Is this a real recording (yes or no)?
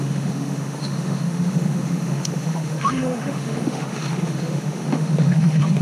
no